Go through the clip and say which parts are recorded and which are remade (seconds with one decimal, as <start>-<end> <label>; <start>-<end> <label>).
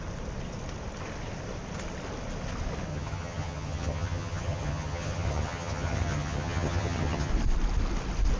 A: 0.0-2.9 recorded; 2.9-7.3 remade; 7.3-8.4 recorded